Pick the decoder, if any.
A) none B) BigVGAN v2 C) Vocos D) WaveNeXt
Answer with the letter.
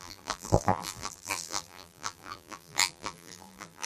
B